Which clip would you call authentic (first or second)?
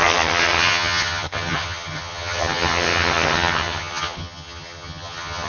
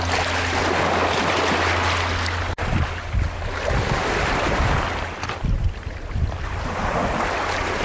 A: second